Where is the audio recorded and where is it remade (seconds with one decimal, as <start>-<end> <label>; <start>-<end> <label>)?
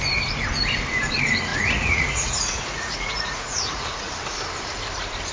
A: 0.0-1.5 recorded; 1.5-4.1 remade; 4.1-5.3 recorded